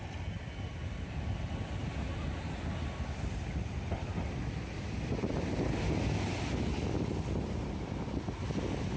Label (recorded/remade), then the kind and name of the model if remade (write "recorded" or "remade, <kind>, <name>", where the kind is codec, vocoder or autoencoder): recorded